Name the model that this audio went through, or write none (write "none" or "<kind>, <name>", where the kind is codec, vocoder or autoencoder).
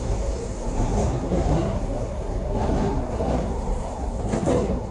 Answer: codec, SNAC